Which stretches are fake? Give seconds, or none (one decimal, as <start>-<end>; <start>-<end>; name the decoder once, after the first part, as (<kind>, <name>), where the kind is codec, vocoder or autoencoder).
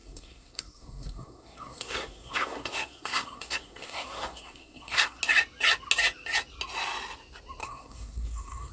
0.0-5.2 (codec, SNAC); 7.6-8.7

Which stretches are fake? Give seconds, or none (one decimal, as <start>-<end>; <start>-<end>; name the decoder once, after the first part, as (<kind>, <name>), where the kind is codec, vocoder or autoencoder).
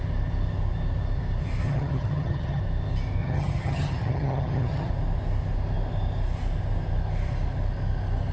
1.6-2.6 (vocoder, HiFi-GAN); 3.2-4.9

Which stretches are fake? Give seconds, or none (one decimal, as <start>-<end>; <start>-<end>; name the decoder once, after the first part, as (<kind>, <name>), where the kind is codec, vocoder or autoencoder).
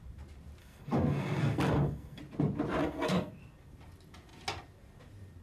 0.6-2.2 (codec, SNAC); 2.8-3.3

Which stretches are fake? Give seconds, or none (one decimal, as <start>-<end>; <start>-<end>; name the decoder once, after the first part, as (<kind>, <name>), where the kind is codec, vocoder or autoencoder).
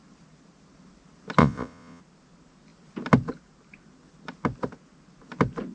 1.4-2.0 (vocoder, Vocos)